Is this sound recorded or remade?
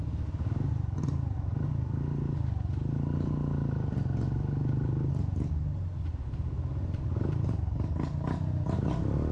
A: recorded